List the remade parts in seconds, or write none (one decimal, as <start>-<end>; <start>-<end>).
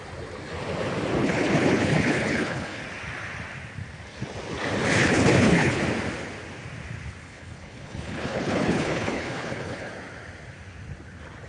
1.2-2.8; 5.0-5.8; 7.2-9.9